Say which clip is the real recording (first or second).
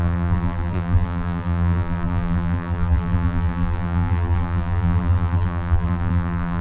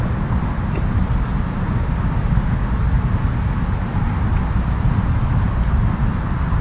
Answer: second